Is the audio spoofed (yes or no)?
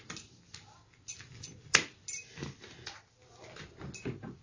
no